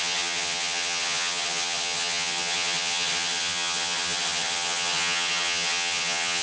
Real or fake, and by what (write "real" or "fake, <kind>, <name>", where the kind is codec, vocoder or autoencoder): fake, vocoder, HiFi-GAN